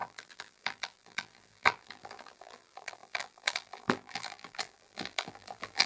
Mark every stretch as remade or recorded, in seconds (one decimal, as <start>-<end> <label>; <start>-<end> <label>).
0.0-5.9 remade